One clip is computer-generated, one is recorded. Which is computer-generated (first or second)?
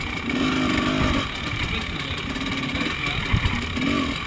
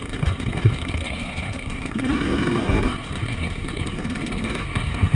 second